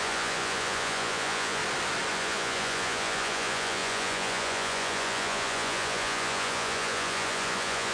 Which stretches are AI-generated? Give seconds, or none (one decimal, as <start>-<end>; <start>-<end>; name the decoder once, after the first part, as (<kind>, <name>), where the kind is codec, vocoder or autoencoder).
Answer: 0.0-1.6 (vocoder, Vocos); 2.1-7.9

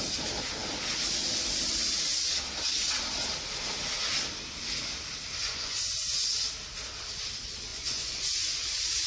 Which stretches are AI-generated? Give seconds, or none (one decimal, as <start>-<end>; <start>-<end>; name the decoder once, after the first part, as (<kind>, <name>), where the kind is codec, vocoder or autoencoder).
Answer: 5.4-6.3 (vocoder, Vocos); 7.7-8.7